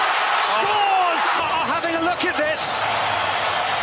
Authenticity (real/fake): real